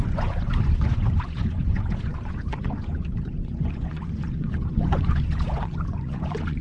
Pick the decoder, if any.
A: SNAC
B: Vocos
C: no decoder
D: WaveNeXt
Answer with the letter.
B